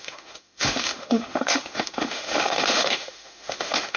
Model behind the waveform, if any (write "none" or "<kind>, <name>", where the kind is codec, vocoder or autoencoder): autoencoder, DAC-VAE